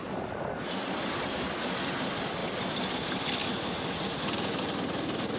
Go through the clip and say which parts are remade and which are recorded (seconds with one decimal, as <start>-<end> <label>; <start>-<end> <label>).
0.0-2.4 recorded; 2.4-2.9 remade; 2.9-5.4 recorded